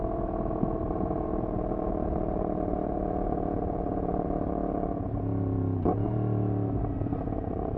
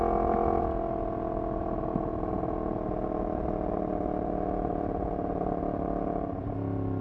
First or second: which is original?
second